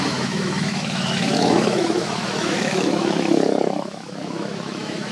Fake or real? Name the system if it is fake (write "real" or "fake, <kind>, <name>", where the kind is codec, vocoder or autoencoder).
fake, autoencoder, DAC-VAE